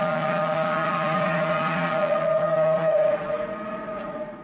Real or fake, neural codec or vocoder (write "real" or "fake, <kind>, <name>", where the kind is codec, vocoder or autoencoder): fake, vocoder, Vocos